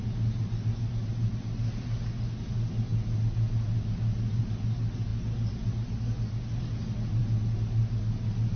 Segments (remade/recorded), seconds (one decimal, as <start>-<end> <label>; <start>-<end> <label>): 0.0-8.6 recorded